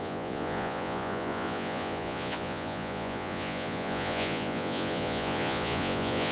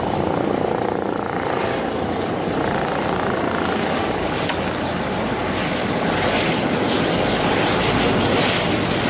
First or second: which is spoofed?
first